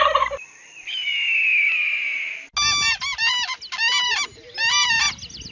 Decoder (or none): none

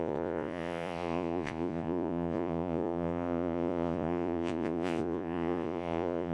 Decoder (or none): vocoder, Vocos